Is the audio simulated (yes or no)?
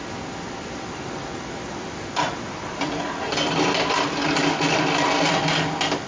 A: no